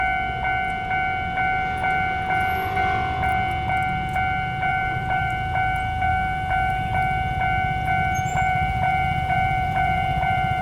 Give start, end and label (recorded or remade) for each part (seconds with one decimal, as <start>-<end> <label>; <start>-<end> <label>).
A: 0.0-4.7 recorded; 4.7-5.3 remade; 5.3-8.3 recorded; 8.3-10.6 remade